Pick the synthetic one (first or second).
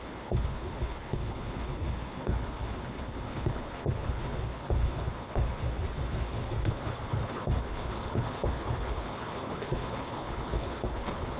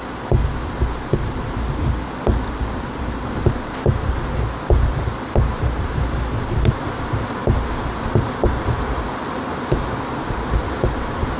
first